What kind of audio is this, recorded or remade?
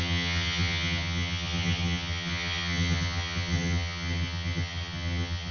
remade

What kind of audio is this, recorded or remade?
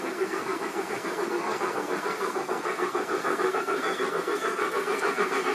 remade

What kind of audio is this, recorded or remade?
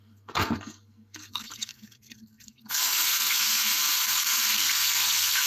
remade